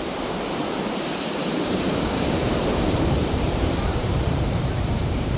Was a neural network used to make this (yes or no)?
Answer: yes